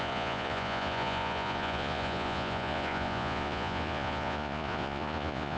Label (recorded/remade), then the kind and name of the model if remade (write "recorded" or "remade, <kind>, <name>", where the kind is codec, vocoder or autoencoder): remade, vocoder, Vocos